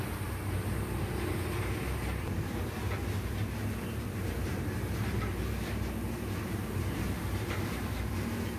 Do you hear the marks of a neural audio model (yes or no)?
yes